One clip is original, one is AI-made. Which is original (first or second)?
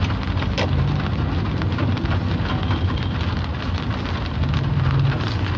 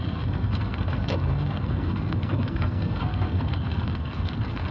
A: first